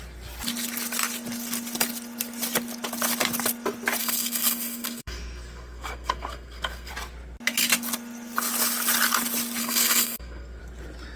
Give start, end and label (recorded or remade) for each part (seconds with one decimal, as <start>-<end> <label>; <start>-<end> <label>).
0.0-4.0 recorded; 4.0-6.9 remade; 6.9-9.6 recorded; 9.6-10.6 remade; 10.6-11.2 recorded